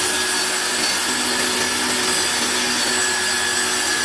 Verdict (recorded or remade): recorded